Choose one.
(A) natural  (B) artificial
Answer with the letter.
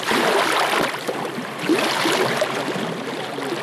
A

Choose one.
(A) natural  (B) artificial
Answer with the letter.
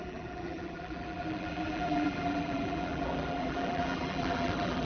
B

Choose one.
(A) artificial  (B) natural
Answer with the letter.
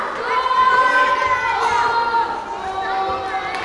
B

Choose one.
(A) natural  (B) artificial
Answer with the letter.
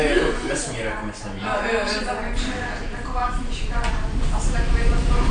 B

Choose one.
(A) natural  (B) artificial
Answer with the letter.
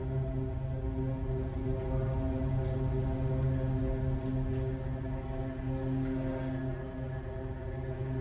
A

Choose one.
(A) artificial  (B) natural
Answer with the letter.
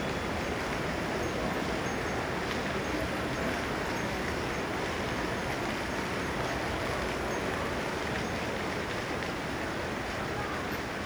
B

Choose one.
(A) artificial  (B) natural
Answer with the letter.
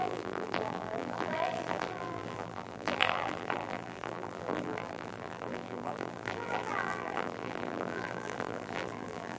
A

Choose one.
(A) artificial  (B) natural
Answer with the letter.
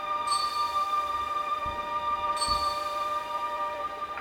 A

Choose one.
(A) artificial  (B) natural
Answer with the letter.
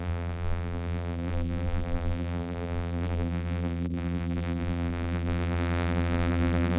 A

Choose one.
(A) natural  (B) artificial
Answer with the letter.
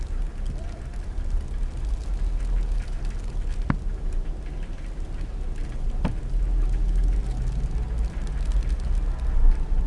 A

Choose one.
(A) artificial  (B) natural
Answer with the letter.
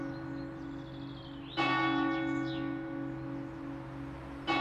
B